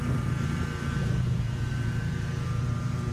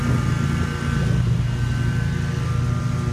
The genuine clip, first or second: second